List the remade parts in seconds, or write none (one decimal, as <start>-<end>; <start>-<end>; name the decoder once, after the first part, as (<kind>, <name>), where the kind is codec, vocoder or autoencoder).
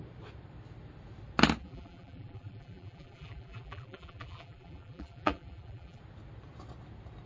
1.6-6.0 (vocoder, BigVGAN v2)